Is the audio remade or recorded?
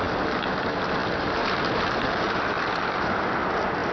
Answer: recorded